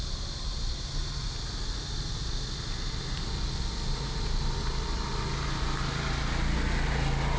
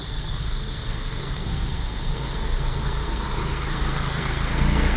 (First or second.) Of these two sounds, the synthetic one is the second